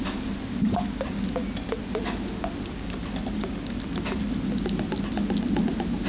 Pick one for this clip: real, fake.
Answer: real